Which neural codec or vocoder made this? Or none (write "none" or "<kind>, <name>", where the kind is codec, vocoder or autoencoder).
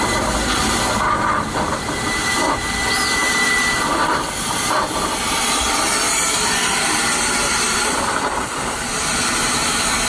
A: vocoder, BigVGAN v2